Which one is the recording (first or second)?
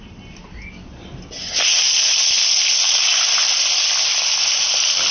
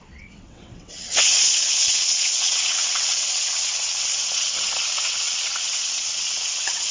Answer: first